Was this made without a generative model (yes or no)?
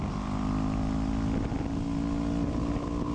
yes